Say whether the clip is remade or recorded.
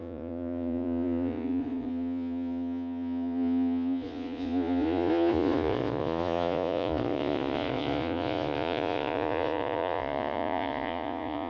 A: remade